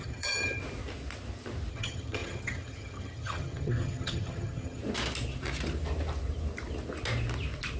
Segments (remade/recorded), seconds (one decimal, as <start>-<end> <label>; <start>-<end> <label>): 0.0-0.6 remade; 0.6-1.7 recorded; 1.7-4.8 remade; 4.8-7.8 recorded